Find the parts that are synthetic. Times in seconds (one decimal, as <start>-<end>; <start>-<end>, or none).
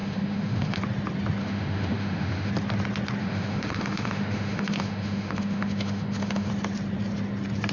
0.0-0.8; 1.4-2.5; 3.2-6.5